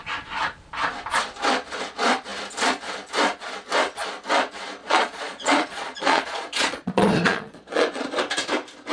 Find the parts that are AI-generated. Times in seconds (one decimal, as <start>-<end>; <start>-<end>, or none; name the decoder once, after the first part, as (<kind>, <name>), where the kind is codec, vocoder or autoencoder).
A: 4.8-8.2 (vocoder, Vocos)